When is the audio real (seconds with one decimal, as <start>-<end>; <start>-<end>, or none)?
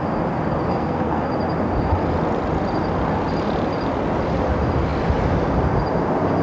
0.0-0.7; 1.3-6.4